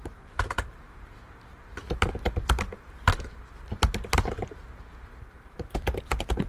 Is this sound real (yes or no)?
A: no